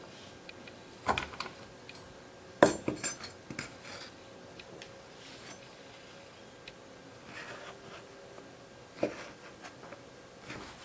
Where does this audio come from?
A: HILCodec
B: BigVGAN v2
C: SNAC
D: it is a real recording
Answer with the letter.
D